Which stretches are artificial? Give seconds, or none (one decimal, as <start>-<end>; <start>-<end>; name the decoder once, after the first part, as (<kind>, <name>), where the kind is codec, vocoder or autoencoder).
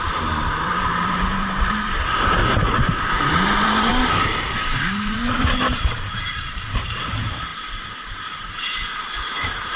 0.0-2.4 (vocoder, BigVGAN v2); 3.1-9.8